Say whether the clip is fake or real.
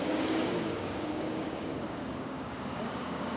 fake